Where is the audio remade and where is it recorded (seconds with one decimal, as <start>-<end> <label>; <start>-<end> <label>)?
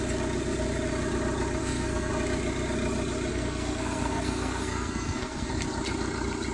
0.0-1.6 recorded; 1.6-2.1 remade; 2.1-3.3 recorded; 3.3-5.5 remade; 5.5-6.5 recorded